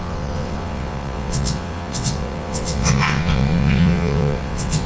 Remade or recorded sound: remade